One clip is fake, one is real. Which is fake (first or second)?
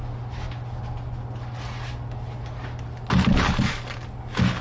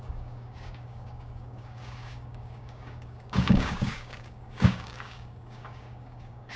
second